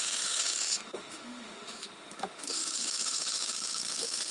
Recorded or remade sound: remade